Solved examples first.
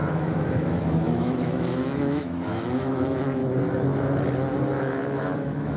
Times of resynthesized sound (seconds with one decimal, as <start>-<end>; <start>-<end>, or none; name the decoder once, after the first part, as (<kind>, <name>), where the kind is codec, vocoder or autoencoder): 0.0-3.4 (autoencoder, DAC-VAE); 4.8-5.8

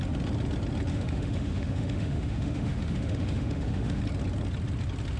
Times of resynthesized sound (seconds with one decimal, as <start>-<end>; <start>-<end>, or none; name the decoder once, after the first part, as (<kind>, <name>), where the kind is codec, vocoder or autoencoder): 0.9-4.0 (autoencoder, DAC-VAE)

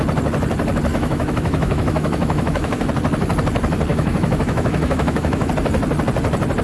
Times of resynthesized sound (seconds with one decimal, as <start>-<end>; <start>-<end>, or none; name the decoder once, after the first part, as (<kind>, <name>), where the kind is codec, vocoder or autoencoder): 0.9-2.9 (autoencoder, DAC-VAE); 3.9-5.5

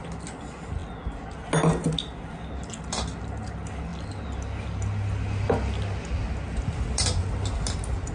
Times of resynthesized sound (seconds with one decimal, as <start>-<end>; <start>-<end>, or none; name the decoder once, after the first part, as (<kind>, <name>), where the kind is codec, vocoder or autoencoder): none